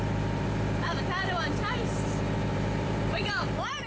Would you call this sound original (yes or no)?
no